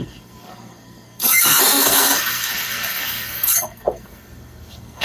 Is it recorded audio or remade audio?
remade